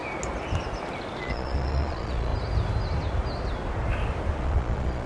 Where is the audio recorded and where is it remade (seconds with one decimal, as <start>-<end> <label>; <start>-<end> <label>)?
0.0-1.2 recorded; 1.2-2.3 remade; 2.3-4.4 recorded; 4.4-5.1 remade